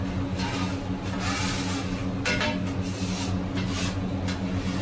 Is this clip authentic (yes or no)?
yes